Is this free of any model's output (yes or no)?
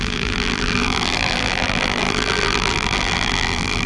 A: no